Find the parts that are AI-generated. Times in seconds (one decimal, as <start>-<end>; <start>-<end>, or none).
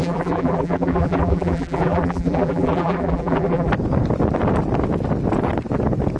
0.0-3.7